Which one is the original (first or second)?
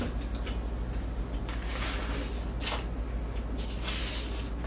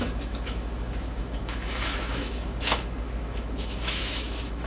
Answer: first